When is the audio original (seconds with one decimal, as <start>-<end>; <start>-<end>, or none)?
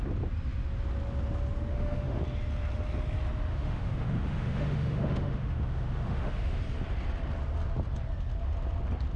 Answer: 0.0-1.7; 2.2-3.5; 6.6-9.2